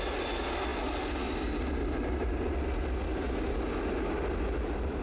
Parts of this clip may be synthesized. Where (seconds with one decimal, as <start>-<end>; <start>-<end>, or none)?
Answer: none